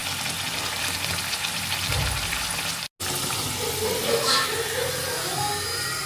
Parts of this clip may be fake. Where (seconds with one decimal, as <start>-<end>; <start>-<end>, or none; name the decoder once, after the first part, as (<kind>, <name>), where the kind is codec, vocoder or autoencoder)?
none